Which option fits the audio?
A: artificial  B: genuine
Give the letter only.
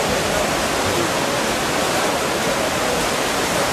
B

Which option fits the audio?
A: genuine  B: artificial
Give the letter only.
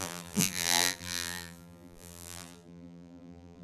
B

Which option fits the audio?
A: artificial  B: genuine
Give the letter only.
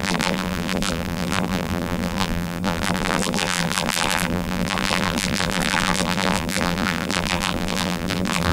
A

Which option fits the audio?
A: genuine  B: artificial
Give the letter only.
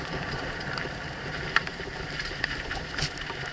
B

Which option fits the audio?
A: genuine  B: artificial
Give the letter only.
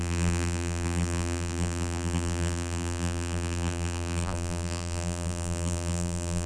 B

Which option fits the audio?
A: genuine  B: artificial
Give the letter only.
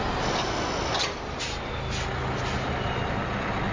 A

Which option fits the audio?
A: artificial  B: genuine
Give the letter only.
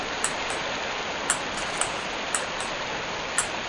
B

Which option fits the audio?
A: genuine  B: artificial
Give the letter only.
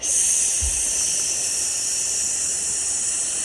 B